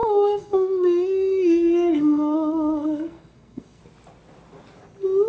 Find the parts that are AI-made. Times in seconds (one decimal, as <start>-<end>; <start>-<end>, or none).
0.0-3.8